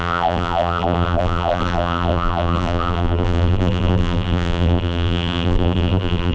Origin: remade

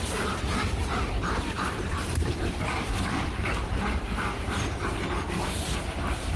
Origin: remade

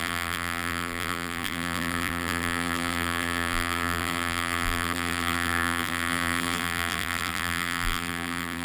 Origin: remade